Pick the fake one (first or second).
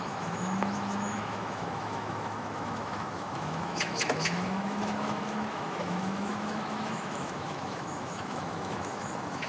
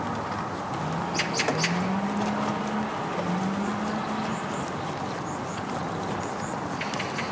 first